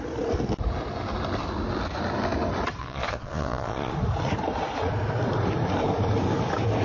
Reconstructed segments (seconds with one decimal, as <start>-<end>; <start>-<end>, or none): 2.8-3.9